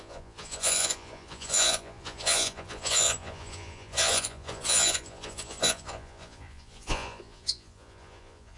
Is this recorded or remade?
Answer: remade